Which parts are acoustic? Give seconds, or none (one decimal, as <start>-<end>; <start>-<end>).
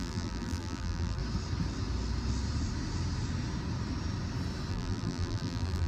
1.2-4.7